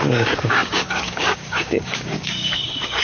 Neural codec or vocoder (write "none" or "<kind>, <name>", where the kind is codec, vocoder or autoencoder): codec, DAC